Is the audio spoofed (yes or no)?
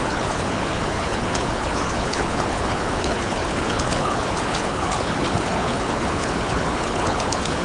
yes